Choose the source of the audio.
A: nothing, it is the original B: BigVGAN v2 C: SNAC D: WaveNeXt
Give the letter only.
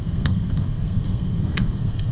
C